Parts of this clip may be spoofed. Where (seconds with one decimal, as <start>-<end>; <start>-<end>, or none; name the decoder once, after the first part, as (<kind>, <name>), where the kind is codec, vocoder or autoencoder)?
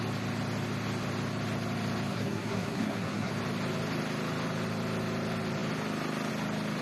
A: 2.1-3.3 (codec, SNAC)